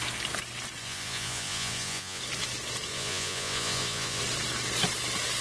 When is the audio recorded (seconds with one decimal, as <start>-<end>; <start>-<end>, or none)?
0.0-0.8; 2.2-2.9; 4.2-5.4